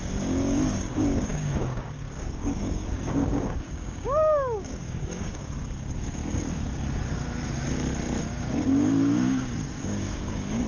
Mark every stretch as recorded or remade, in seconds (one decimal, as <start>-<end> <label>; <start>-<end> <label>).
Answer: 0.0-6.2 remade; 6.2-8.2 recorded; 8.2-10.7 remade